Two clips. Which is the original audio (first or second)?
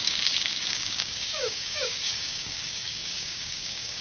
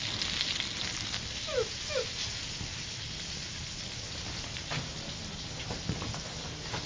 second